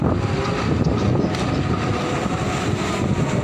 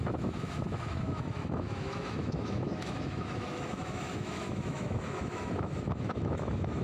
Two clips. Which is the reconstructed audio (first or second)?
second